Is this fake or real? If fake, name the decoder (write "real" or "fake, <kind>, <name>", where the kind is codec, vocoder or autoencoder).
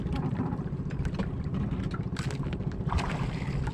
real